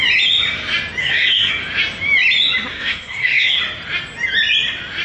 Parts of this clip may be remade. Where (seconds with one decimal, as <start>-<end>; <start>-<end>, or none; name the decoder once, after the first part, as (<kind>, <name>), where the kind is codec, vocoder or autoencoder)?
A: 1.0-1.5 (codec, SNAC); 2.7-3.6